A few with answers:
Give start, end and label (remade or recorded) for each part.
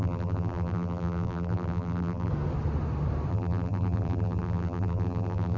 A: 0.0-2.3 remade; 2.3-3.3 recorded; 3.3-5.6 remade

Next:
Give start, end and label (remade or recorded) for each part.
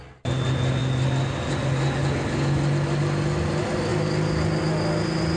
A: 0.0-5.4 recorded